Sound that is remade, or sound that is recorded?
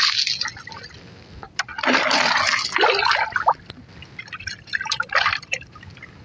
recorded